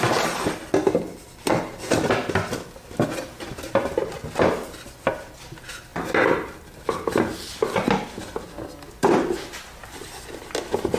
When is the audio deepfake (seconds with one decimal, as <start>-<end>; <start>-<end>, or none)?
5.9-6.8